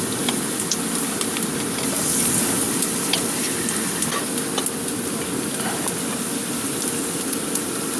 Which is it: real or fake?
real